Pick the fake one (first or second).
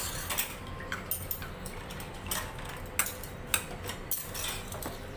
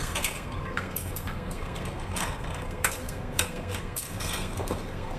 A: second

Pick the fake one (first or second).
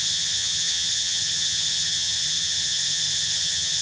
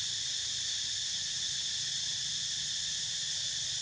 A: first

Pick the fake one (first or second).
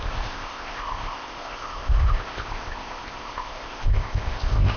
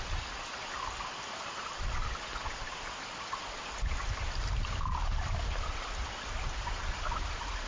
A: first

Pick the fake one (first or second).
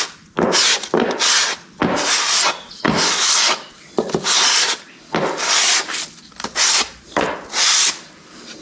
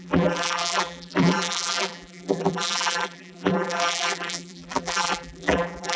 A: second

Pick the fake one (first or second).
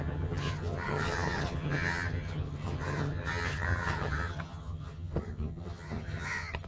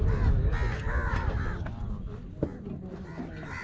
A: first